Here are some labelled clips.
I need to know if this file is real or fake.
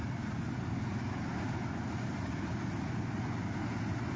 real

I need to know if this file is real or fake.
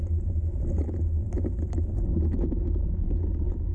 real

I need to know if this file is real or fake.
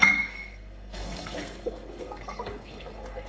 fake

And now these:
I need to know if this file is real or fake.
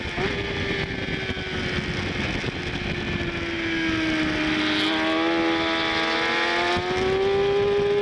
real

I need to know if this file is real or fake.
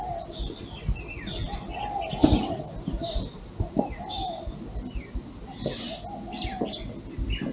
real